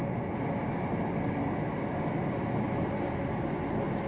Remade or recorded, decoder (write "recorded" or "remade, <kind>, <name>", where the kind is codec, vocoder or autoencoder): recorded